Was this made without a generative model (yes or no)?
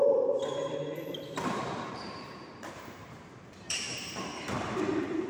no